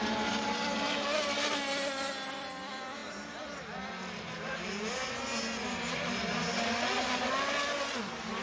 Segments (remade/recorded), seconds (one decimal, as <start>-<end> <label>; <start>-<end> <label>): 0.0-8.4 recorded